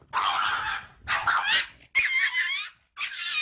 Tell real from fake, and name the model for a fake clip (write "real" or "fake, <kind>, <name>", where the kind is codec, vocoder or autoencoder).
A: real